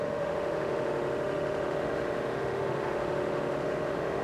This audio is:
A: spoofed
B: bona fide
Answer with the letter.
A